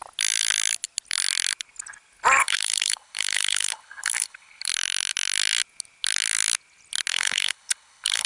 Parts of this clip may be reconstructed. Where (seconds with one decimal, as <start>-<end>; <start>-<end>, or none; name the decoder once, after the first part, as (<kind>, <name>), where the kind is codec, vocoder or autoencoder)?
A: 2.4-4.7 (codec, HILCodec); 7.1-8.3